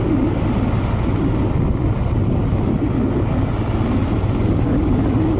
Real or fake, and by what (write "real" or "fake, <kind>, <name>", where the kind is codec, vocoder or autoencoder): real